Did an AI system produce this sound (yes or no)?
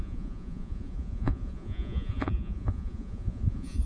yes